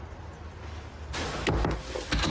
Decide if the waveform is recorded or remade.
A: recorded